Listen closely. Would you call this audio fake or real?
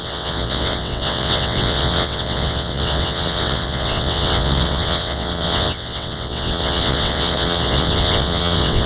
fake